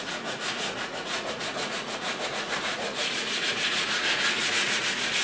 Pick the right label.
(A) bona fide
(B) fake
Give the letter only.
B